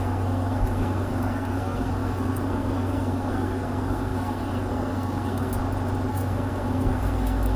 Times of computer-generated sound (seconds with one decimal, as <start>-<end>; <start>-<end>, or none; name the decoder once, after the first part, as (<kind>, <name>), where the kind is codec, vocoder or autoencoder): 0.0-5.6 (codec, SNAC); 6.1-7.6